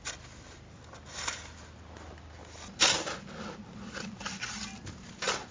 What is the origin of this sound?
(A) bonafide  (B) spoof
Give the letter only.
A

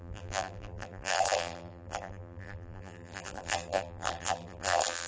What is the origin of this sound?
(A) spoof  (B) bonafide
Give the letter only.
A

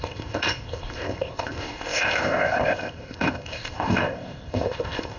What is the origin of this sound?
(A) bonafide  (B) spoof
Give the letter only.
B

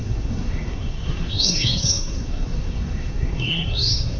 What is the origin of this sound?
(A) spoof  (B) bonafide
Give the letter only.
A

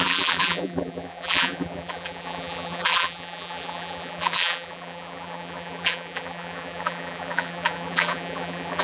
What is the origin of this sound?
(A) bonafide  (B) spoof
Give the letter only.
B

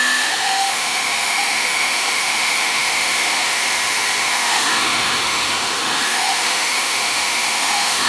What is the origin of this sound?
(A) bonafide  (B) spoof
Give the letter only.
B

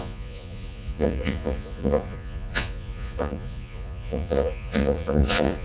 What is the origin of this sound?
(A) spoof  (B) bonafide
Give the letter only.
A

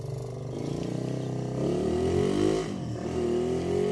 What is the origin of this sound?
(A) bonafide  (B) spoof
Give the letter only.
A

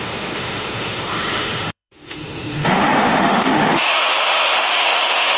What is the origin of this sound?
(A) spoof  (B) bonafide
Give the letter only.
A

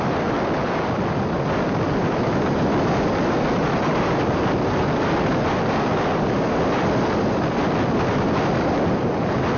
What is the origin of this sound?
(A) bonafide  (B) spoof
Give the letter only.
A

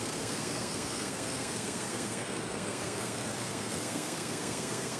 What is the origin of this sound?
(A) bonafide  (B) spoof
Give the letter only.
B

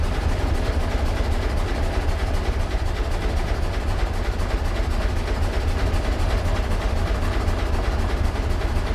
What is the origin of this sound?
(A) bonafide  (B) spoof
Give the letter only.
A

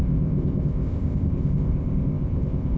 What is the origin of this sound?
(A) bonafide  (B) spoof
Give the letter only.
B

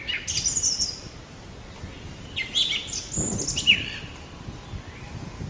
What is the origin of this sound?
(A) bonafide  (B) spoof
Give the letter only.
A